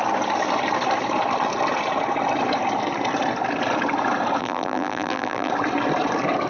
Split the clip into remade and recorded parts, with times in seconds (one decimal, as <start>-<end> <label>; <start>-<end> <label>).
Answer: 0.0-4.4 recorded; 4.4-5.5 remade; 5.5-6.5 recorded